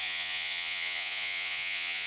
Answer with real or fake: fake